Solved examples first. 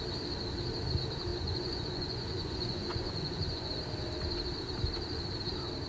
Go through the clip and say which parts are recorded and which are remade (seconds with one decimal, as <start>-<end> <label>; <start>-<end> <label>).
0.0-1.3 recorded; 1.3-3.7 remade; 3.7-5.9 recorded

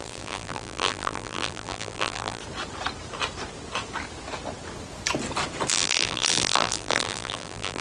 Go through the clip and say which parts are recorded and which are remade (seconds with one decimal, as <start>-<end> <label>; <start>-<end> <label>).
0.0-2.4 remade; 2.4-5.7 recorded; 5.7-7.8 remade

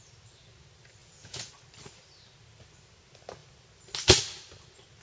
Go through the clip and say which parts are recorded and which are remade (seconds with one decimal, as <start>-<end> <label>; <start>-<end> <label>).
0.0-1.0 recorded; 1.0-1.5 remade; 1.5-5.0 recorded

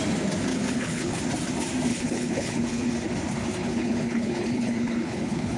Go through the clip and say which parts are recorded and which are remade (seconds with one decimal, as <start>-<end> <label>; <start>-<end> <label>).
0.0-0.5 recorded; 0.5-1.2 remade; 1.2-1.9 recorded; 1.9-2.9 remade; 2.9-3.6 recorded; 3.6-5.6 remade

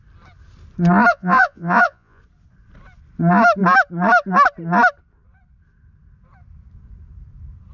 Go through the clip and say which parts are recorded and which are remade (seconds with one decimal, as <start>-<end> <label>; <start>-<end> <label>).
0.0-1.1 recorded; 1.1-2.2 remade; 2.2-7.7 recorded

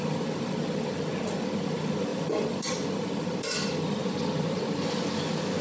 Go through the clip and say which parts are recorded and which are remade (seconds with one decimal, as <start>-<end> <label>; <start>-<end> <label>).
0.0-2.1 recorded; 2.1-4.6 remade; 4.6-5.6 recorded